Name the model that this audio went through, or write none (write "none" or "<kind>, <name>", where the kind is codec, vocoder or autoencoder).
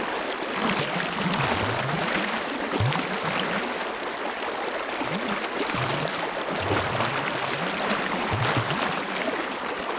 none